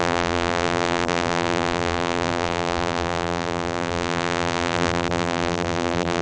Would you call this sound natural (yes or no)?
no